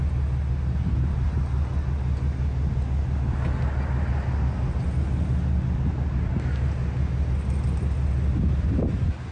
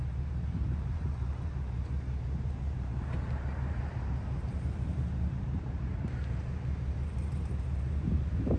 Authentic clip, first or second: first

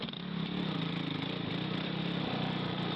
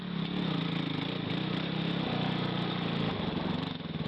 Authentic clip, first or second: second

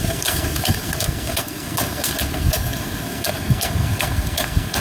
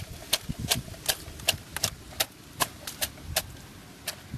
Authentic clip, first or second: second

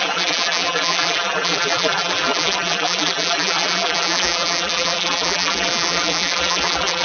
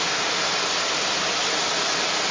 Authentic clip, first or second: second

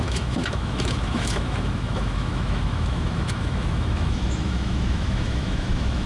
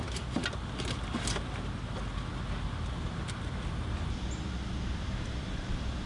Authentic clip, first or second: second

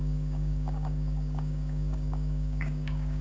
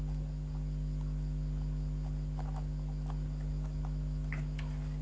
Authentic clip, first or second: second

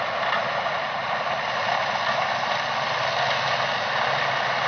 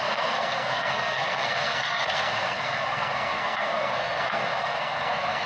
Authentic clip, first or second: first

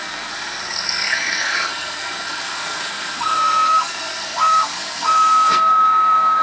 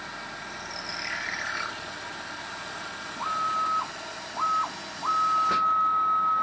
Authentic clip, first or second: second